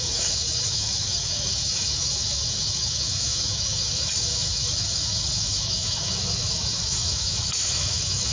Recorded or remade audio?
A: remade